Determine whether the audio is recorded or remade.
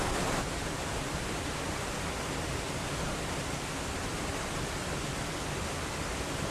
recorded